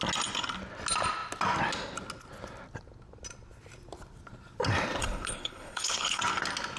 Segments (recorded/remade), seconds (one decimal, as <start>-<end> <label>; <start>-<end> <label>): 0.0-5.0 recorded; 5.0-6.2 remade; 6.2-6.8 recorded